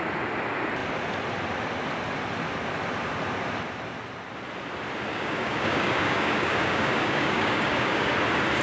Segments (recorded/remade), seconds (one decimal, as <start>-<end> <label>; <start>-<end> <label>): 0.0-5.1 recorded; 5.1-8.1 remade; 8.1-8.6 recorded